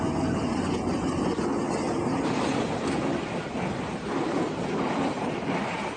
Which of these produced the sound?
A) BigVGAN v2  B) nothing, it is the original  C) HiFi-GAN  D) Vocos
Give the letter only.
B